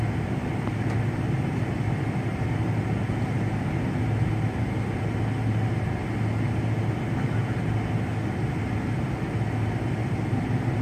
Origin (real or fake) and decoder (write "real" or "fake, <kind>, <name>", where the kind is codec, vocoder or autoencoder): real